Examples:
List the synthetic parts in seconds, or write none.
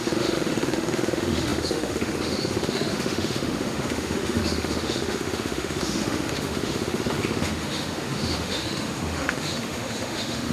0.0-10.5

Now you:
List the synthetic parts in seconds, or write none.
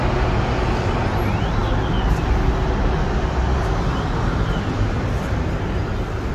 none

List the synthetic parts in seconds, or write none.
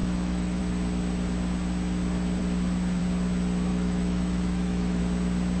0.0-0.6; 3.7-5.0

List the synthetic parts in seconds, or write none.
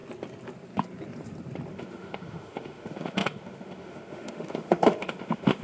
1.7-5.6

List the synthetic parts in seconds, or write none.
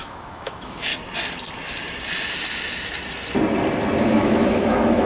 0.0-0.9; 4.0-5.1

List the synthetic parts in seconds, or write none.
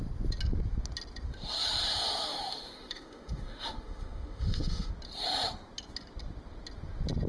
2.3-4.9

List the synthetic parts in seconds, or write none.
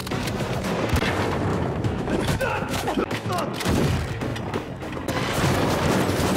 1.5-3.3